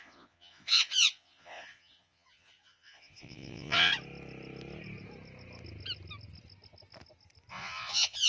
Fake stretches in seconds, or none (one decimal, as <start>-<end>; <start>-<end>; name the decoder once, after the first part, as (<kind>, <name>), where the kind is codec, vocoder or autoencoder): 0.0-3.9 (vocoder, Vocos); 7.5-8.3